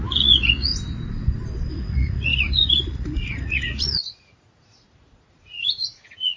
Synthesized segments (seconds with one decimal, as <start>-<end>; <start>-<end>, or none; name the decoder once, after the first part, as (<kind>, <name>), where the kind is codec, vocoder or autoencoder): 0.0-0.7 (vocoder, Vocos); 1.7-6.4